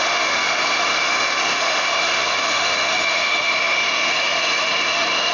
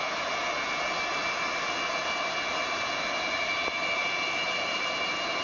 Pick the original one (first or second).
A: second